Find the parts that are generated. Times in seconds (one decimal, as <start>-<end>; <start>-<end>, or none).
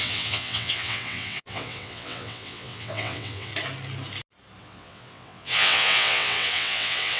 0.0-3.5; 4.6-7.2